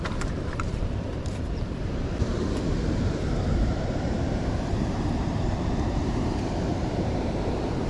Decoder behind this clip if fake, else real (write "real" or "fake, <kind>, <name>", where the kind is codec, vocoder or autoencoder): fake, vocoder, BigVGAN v2